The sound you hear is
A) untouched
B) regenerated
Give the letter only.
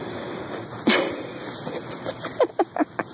A